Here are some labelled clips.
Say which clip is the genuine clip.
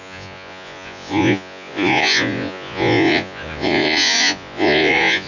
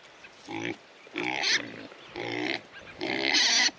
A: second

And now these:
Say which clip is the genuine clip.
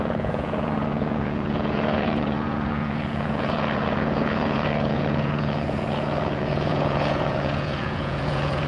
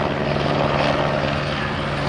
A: second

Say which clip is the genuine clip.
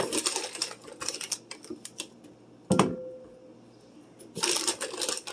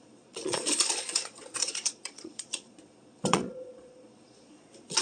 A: first